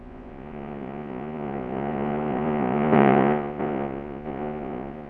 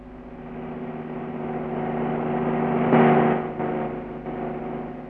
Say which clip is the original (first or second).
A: second